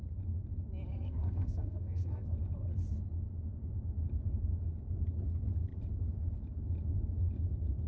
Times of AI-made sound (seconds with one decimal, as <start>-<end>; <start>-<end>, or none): 0.9-2.3